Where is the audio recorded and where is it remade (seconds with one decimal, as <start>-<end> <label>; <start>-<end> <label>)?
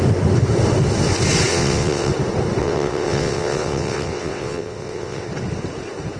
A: 0.0-1.5 recorded; 1.5-2.1 remade; 2.1-2.6 recorded; 2.6-5.3 remade; 5.3-6.2 recorded